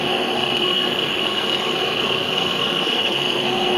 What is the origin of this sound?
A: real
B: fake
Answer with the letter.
B